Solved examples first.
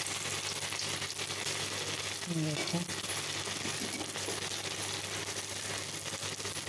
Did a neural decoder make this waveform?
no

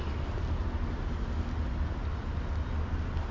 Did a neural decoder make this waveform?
no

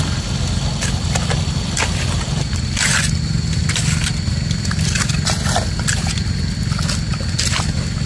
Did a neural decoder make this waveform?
no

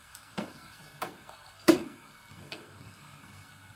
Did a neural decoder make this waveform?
yes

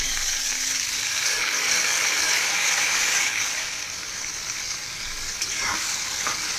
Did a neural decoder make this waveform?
yes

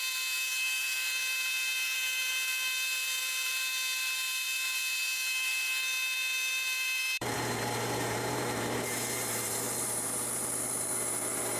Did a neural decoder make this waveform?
yes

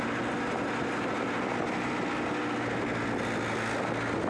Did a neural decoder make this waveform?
no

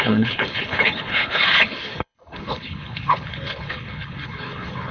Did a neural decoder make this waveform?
yes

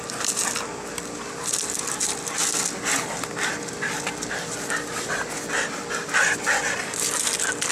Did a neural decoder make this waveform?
no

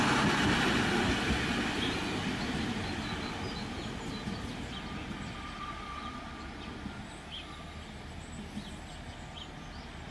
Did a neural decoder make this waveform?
no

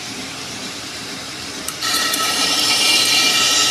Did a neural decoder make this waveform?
yes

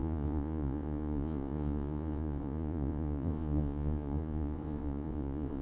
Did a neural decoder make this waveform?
yes